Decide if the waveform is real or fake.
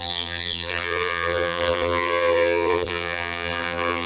fake